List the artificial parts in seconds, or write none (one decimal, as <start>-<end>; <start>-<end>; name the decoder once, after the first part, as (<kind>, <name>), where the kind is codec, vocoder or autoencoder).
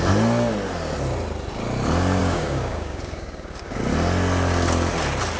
2.2-3.8 (codec, DAC)